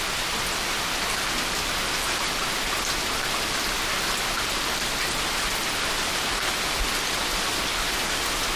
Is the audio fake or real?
real